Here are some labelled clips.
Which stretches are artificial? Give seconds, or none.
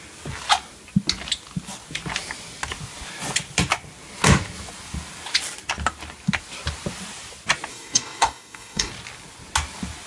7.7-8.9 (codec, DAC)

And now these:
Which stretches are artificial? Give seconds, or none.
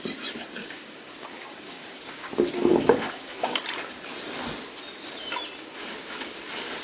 0.6-2.3 (codec, DAC); 2.7-3.6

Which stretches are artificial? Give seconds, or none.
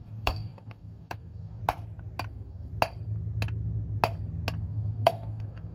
0.0-1.6 (codec, DAC); 2.3-2.7; 4.6-5.7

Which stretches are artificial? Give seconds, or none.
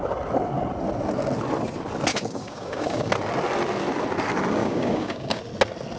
2.1-3.1 (codec, DAC); 4.6-5.4